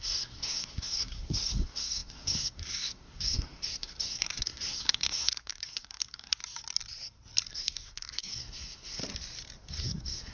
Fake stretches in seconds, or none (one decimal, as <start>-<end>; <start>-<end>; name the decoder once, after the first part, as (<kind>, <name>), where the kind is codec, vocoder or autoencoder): 0.0-6.4 (codec, SNAC); 7.5-9.0; 9.7-10.3